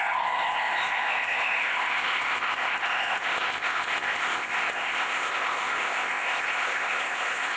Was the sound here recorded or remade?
remade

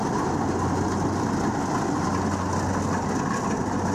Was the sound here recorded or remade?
recorded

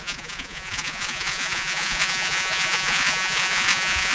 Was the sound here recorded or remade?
remade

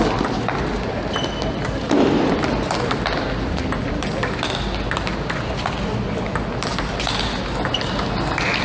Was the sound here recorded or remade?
recorded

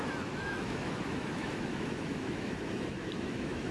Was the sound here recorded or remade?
remade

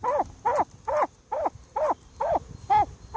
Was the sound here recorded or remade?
recorded